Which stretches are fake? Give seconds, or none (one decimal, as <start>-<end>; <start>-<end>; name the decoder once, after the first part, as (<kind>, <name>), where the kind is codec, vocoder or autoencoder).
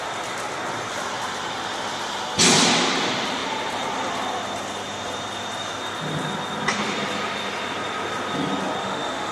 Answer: 8.8-9.3 (autoencoder, DAC-VAE)